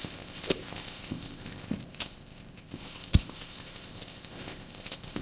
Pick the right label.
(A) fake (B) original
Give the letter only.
A